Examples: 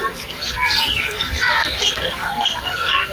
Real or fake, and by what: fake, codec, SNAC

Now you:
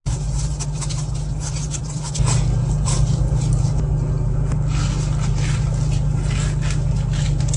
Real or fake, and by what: real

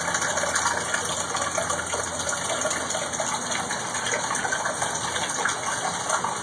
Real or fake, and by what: real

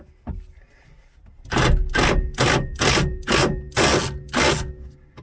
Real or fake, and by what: real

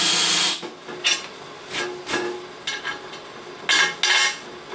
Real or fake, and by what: real